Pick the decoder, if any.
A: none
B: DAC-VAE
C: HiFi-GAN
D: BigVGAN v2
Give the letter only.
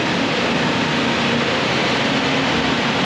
A